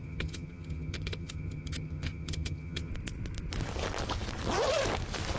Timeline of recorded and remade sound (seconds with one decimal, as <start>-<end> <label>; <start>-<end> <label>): 0.0-2.9 remade; 2.9-5.4 recorded